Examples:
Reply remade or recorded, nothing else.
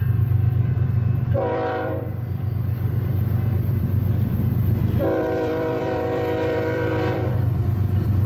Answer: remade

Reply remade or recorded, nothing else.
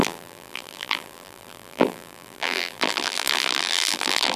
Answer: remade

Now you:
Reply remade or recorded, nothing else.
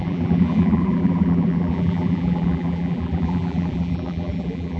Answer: remade